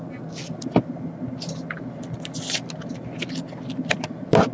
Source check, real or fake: real